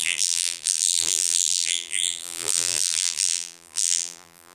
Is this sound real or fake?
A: fake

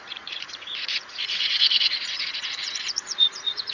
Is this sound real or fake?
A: fake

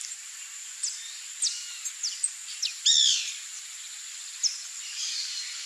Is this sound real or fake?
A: real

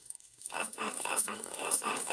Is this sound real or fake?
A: fake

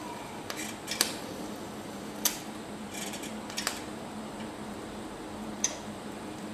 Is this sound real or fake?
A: fake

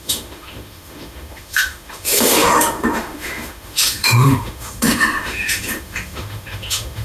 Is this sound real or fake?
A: fake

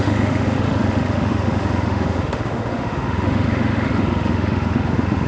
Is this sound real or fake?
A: fake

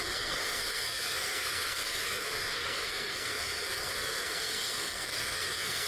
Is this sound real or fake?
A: fake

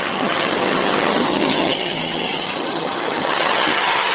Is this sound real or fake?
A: fake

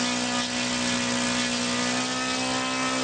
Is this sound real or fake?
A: real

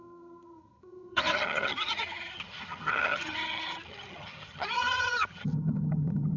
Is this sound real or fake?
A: fake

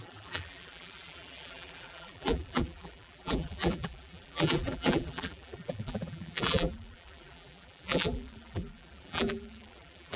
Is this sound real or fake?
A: fake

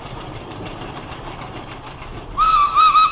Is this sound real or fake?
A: fake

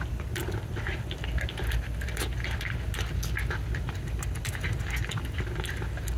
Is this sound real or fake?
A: real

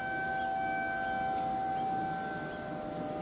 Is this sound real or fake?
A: real